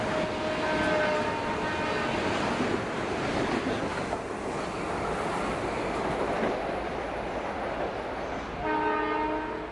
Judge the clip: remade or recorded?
recorded